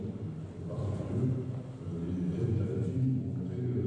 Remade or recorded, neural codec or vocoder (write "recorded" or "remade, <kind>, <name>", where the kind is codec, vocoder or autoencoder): recorded